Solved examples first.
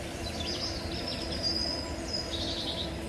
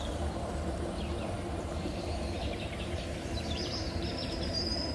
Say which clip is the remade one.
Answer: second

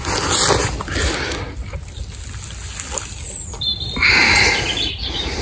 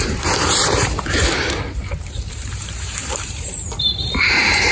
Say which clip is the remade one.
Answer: second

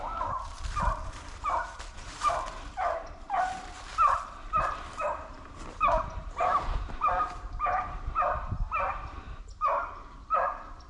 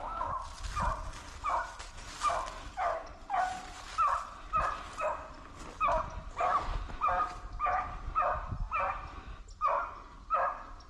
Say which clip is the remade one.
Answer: first